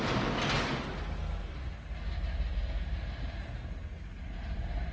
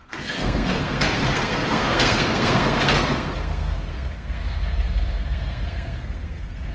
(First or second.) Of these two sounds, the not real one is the second